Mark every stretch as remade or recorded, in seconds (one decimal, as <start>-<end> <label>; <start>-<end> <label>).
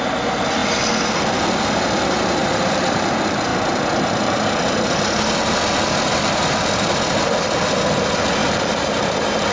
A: 0.0-2.4 recorded; 2.4-3.1 remade; 3.1-9.5 recorded